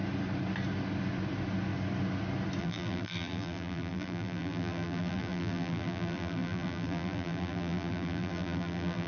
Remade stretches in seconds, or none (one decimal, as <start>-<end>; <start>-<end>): 2.6-9.1